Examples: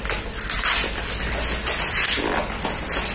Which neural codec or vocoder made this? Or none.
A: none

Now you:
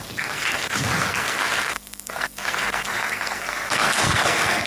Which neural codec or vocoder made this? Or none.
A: codec, SNAC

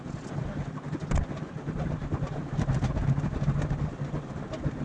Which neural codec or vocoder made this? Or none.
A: none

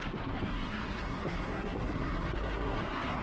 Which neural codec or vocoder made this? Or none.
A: codec, SNAC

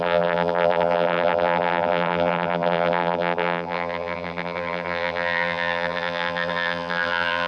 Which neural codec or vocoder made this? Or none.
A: vocoder, BigVGAN v2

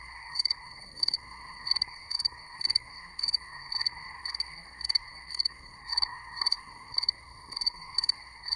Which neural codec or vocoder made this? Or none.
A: codec, SNAC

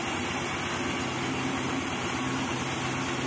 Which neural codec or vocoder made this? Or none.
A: none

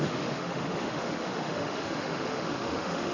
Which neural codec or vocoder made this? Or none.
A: autoencoder, DAC-VAE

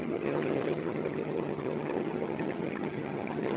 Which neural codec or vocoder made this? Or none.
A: vocoder, HiFi-GAN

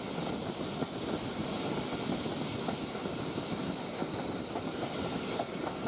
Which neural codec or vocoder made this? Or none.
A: none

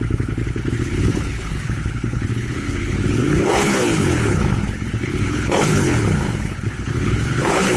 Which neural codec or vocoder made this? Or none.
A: codec, HILCodec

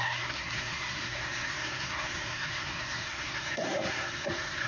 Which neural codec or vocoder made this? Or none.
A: codec, SNAC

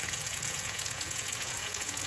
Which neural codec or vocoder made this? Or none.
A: vocoder, Vocos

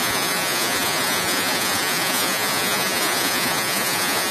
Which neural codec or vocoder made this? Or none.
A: vocoder, Vocos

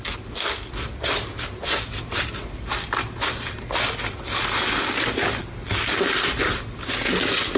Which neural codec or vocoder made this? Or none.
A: none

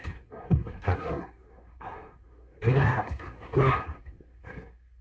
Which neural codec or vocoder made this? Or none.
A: codec, SNAC